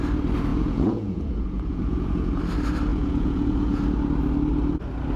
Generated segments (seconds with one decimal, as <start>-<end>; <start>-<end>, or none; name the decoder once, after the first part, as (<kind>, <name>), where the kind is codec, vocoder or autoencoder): 0.5-2.4 (vocoder, Vocos); 2.9-3.8